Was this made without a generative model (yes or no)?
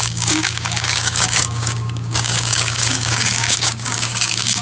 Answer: no